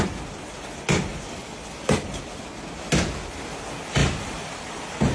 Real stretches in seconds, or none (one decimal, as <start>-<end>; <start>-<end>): 0.0-1.1; 2.1-4.0